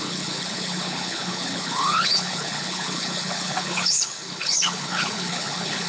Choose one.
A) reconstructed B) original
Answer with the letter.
A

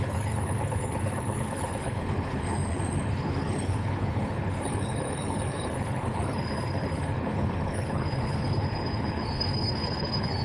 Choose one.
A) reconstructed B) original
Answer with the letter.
A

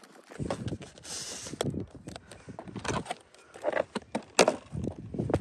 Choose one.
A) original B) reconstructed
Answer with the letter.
A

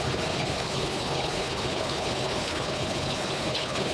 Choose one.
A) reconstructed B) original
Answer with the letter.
A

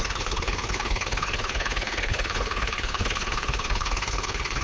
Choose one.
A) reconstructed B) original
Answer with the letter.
A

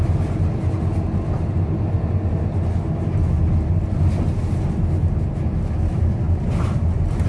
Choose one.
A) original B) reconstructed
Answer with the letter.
A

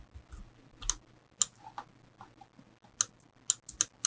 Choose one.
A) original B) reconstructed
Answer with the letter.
A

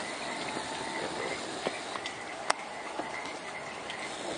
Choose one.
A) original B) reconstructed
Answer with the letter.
A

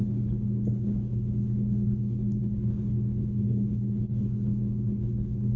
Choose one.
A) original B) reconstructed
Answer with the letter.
B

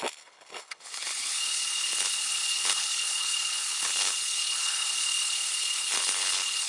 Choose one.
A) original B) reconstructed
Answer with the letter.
B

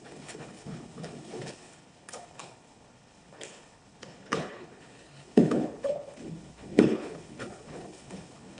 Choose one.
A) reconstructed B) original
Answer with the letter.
A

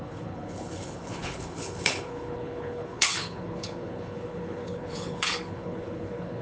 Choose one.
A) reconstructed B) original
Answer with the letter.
A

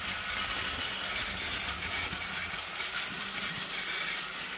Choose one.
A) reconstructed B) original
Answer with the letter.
B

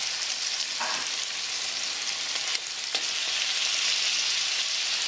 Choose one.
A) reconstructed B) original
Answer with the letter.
B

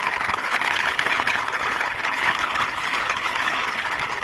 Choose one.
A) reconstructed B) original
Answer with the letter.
A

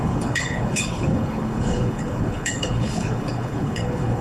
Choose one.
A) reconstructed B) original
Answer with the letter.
A